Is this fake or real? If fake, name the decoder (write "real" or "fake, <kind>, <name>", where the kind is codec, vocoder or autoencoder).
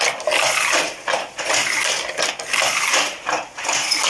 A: real